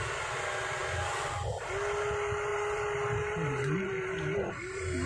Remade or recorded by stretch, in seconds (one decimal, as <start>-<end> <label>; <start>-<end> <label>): 0.0-2.5 recorded; 2.5-4.5 remade; 4.5-5.1 recorded